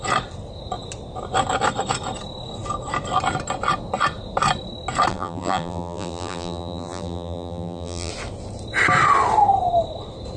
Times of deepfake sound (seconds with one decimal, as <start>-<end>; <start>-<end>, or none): 5.1-8.1